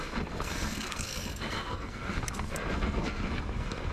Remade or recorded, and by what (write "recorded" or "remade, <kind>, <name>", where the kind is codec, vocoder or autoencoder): remade, codec, SNAC